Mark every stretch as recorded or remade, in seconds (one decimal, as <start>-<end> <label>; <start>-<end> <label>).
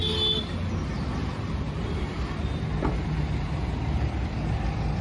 0.0-5.0 recorded